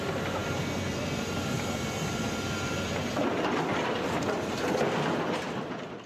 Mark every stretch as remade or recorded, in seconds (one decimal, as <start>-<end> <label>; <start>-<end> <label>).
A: 0.0-6.1 recorded